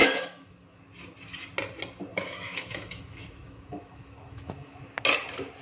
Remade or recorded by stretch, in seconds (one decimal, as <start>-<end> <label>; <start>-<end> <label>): 0.0-0.8 remade; 0.8-2.1 recorded; 2.1-4.8 remade; 4.8-5.6 recorded